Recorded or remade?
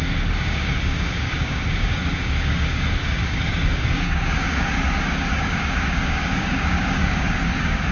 remade